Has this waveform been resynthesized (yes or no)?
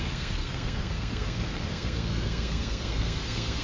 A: yes